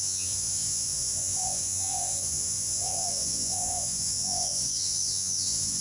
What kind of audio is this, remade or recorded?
remade